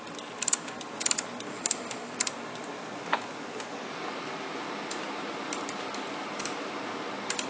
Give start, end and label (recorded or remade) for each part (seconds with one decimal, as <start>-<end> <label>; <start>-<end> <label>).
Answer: 0.0-1.5 recorded; 1.5-2.1 remade; 2.1-7.5 recorded